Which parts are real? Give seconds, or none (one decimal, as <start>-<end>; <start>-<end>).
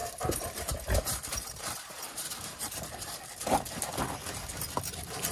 3.2-5.3